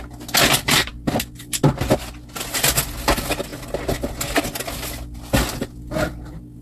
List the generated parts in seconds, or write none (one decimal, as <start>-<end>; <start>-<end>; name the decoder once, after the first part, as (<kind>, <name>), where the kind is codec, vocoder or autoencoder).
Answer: none